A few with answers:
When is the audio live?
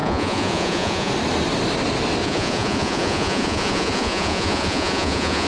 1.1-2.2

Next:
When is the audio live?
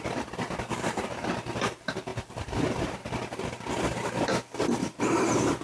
0.0-5.6